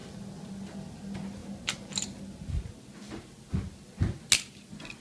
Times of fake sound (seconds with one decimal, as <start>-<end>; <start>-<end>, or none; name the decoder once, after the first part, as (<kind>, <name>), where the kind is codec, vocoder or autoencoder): none